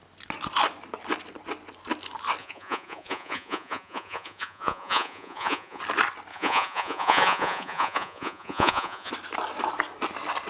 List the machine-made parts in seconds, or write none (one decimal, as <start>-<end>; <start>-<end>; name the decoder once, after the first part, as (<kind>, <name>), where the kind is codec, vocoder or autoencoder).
2.4-5.8 (vocoder, Vocos); 6.3-9.1